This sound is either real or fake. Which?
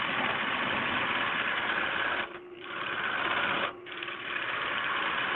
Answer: real